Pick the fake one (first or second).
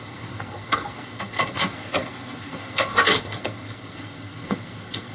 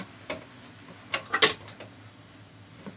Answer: first